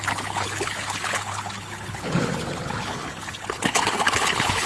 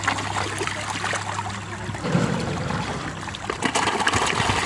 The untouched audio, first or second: second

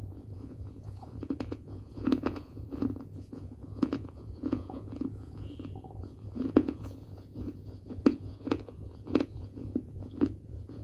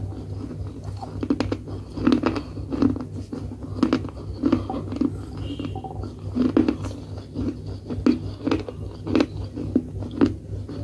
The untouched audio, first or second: second